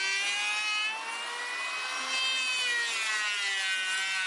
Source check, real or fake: real